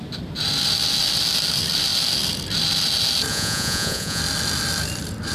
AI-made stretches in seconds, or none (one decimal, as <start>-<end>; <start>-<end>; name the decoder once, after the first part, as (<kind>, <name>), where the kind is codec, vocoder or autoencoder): 3.3-4.2 (vocoder, Vocos)